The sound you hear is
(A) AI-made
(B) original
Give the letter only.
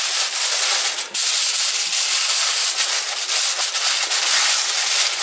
B